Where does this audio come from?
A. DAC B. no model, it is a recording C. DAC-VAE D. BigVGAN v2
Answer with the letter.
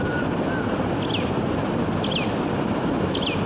B